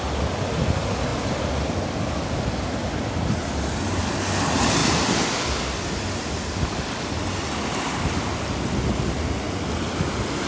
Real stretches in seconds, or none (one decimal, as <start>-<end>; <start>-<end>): 0.0-10.5